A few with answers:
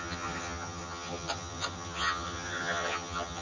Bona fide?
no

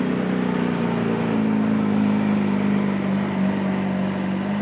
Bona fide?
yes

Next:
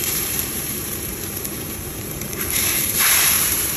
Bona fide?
no